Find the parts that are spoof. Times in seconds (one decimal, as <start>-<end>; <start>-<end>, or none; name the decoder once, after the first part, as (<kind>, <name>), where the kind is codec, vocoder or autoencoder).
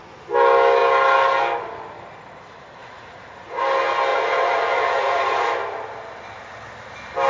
2.8-3.6 (vocoder, Vocos); 4.1-5.5